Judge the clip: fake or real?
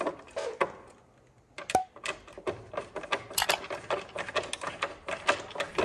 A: real